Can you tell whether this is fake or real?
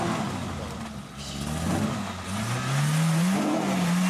real